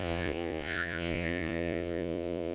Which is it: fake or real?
fake